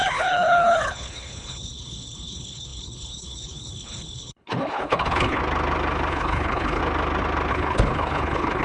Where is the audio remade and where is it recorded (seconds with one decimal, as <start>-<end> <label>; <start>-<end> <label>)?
0.0-5.4 remade; 5.4-6.1 recorded; 6.1-6.8 remade; 6.8-7.5 recorded; 7.5-8.6 remade